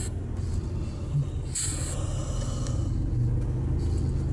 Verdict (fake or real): real